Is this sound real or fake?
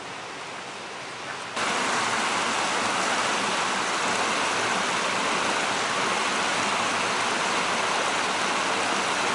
real